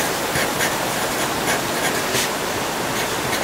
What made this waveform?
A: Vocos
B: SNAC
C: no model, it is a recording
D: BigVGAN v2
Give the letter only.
C